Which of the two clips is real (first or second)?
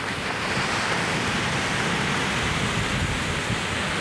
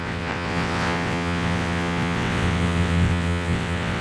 first